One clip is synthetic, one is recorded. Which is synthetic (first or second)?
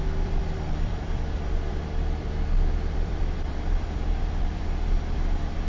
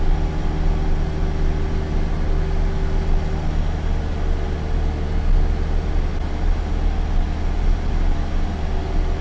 first